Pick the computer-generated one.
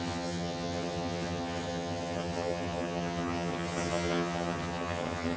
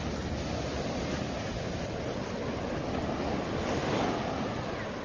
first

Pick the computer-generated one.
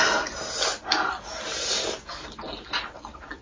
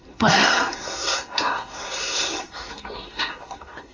second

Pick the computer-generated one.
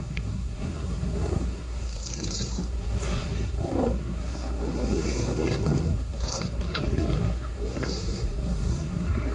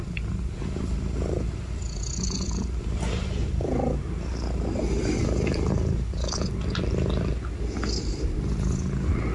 first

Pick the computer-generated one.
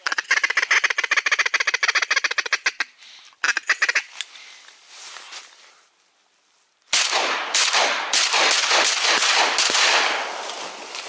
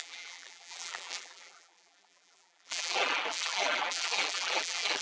second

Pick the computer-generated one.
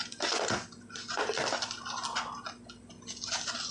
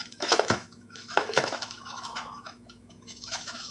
second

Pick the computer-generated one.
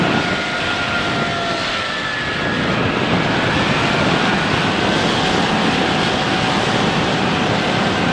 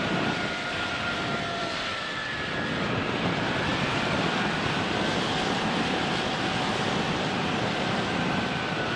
second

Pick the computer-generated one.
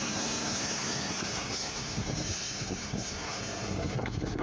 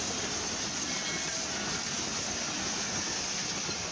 first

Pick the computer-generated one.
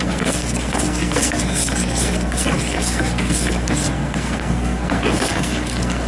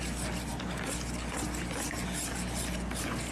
first